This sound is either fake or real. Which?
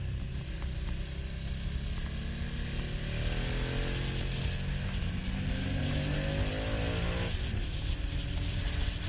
real